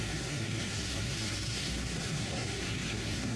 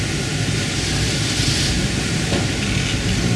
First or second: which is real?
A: second